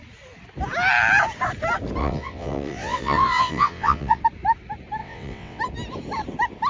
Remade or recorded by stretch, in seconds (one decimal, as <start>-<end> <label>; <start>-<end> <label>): 0.0-2.0 recorded; 2.0-4.2 remade; 4.2-5.0 recorded; 5.0-5.6 remade; 5.6-6.7 recorded